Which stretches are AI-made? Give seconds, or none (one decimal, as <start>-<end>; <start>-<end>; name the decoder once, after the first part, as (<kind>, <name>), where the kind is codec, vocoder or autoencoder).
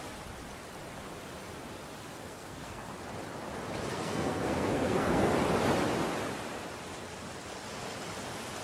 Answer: 2.1-2.9 (codec, SNAC); 3.9-5.3